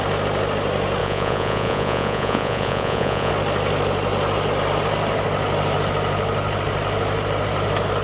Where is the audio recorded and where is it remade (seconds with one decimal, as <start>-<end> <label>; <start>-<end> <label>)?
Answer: 0.0-1.0 recorded; 1.0-3.3 remade; 3.3-8.0 recorded